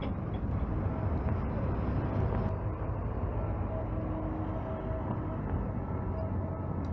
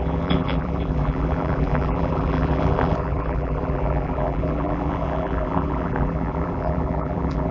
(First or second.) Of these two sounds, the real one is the first